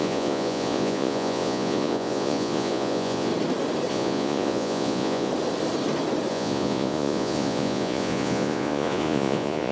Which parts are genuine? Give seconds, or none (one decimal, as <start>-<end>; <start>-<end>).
3.3-3.9; 5.3-6.3